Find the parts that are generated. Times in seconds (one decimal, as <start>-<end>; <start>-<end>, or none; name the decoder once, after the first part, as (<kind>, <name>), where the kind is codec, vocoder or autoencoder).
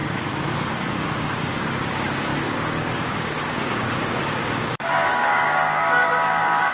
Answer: 0.0-6.7 (codec, DAC)